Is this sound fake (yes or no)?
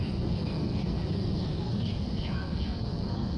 yes